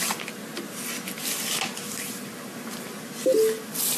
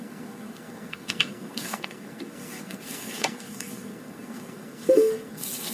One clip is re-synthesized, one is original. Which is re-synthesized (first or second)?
second